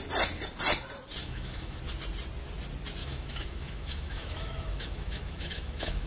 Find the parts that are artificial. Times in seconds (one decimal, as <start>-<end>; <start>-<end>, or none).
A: 1.2-1.8; 3.0-6.1